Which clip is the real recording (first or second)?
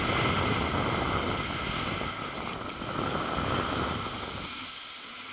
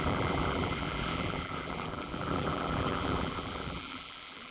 first